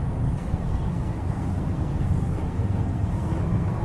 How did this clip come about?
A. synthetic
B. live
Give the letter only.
A